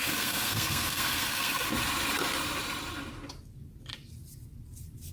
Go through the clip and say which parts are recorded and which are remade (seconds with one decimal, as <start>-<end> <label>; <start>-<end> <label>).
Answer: 0.0-1.7 remade; 1.7-5.1 recorded